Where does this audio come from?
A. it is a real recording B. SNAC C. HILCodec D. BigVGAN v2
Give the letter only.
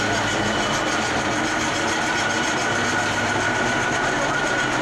A